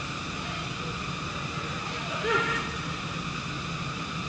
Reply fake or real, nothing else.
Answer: real